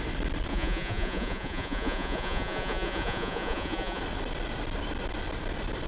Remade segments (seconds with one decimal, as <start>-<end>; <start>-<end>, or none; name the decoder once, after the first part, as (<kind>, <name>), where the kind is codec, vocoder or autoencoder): 0.5-4.0 (vocoder, Vocos)

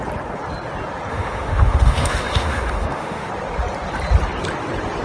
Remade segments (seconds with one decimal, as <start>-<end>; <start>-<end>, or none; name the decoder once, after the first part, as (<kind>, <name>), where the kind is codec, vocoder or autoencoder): 1.1-3.3 (autoencoder, DAC-VAE)

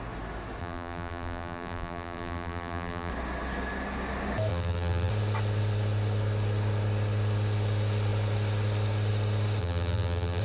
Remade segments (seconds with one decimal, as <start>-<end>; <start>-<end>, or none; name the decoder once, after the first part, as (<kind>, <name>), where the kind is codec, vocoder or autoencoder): 0.6-3.1 (vocoder, BigVGAN v2); 4.5-5.1; 9.6-10.4

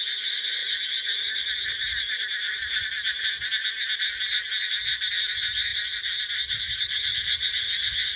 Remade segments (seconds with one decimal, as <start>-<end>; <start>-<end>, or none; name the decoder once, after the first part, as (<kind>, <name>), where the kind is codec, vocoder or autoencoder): none

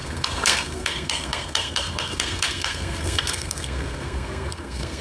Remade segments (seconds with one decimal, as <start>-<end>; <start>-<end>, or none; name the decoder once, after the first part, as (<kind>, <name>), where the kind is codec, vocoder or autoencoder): 0.0-5.0 (codec, SNAC)

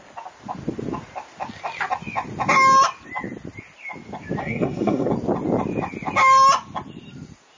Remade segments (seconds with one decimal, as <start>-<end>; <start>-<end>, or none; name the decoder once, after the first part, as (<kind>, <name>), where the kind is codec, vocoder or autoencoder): 4.4-5.1 (codec, SNAC)